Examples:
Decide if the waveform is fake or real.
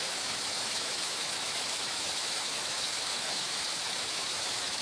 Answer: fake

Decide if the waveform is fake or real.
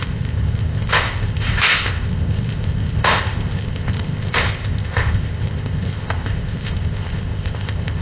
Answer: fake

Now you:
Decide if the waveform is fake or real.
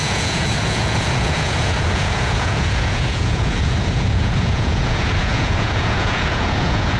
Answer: fake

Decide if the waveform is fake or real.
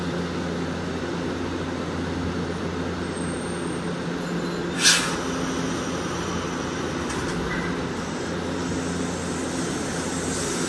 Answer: real